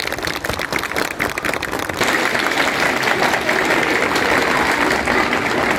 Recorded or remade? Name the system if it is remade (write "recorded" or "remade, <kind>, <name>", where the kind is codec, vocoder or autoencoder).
recorded